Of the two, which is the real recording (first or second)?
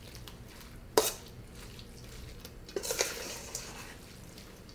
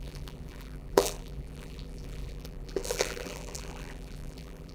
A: first